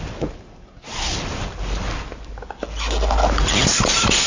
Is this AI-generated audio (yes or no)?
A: no